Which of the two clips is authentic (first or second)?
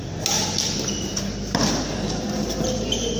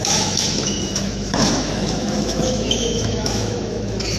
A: first